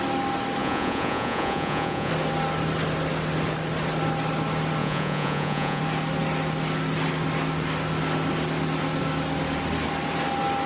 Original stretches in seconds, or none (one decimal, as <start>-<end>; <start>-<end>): 0.0-0.6; 2.1-4.8; 5.8-10.7